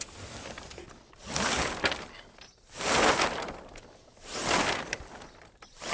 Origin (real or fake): real